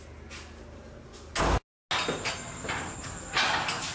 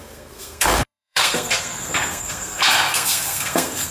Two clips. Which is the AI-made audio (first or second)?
second